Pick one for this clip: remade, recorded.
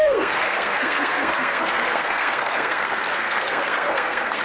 remade